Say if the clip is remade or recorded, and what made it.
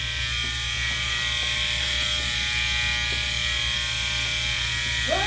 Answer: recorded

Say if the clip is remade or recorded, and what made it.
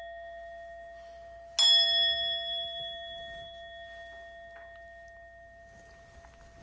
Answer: recorded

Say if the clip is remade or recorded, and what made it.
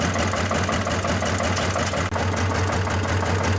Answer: recorded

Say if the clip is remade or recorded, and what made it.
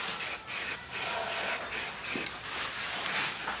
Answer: recorded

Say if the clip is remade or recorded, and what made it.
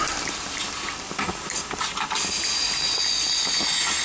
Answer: recorded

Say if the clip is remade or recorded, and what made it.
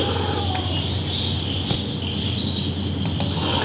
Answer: recorded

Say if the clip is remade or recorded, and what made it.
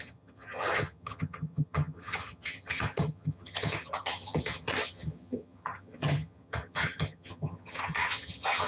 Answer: remade, vocoder, HiFi-GAN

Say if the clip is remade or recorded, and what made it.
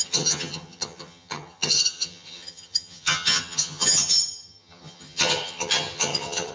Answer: remade, vocoder, HiFi-GAN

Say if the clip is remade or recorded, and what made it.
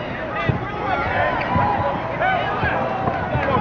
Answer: recorded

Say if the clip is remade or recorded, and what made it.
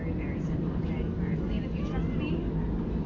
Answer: recorded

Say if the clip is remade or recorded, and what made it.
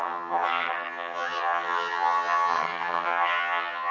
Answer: remade, vocoder, HiFi-GAN